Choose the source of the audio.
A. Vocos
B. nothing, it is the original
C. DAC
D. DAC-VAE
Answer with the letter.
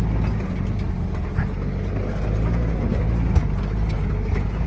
B